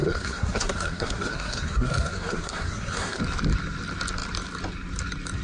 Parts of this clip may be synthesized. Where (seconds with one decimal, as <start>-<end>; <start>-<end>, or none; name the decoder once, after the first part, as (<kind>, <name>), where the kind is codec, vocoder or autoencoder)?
0.0-3.2 (codec, SNAC)